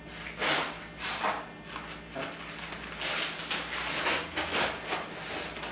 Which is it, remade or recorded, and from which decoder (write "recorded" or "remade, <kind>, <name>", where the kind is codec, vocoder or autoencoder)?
recorded